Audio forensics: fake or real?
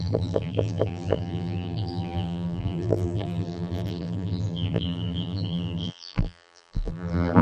fake